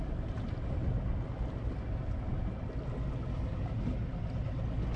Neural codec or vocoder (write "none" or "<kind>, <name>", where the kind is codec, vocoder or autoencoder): none